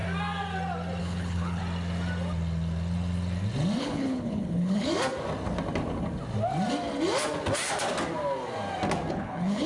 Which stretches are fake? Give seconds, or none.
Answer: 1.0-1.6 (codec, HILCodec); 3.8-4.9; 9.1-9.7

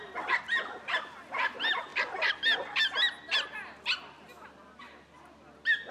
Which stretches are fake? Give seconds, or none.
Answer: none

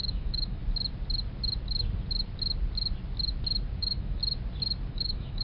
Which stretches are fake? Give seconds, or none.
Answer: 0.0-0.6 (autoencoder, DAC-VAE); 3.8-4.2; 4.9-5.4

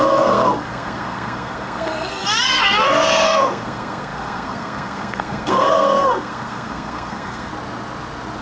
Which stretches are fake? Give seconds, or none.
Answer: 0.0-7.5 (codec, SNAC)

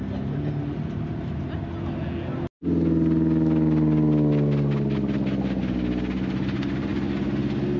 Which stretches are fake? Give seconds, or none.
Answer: none

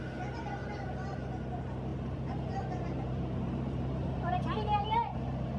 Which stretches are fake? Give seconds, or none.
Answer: 0.6-1.3 (vocoder, BigVGAN v2); 1.9-5.6

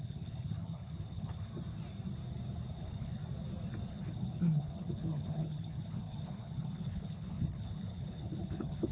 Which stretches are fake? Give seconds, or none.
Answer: 0.0-1.5 (codec, HILCodec); 2.8-3.2; 3.9-8.9